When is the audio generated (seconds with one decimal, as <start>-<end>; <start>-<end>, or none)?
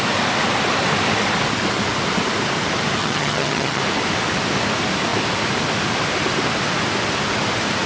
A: 3.0-3.8